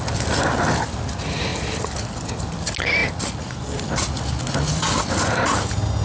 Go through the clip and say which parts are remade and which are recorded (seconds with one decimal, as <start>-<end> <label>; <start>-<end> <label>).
0.0-6.0 recorded